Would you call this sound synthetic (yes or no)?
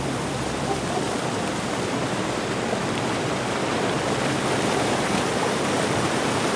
yes